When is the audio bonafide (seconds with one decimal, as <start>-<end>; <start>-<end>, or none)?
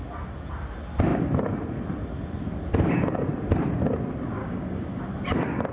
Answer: 0.0-4.4; 5.0-5.7